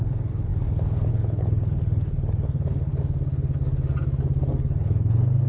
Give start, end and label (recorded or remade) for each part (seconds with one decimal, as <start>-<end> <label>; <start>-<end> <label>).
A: 0.0-2.9 remade; 2.9-4.8 recorded; 4.8-5.5 remade